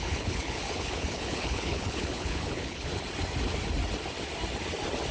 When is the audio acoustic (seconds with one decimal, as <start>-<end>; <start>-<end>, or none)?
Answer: 2.9-5.1